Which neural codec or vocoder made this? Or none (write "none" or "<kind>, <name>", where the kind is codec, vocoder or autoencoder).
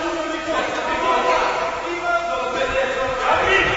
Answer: vocoder, Vocos